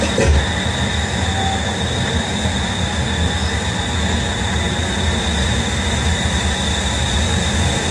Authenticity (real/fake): real